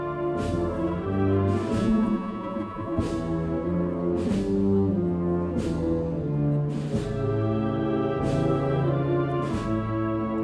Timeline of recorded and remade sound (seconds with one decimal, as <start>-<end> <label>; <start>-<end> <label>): 0.0-1.8 recorded; 1.8-3.0 remade; 3.0-10.4 recorded